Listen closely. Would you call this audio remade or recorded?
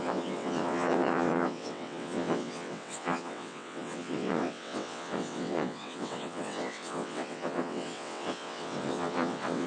remade